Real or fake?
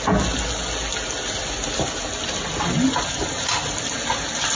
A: real